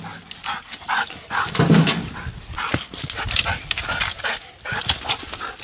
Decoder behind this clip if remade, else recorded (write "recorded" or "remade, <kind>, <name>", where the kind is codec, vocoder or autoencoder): recorded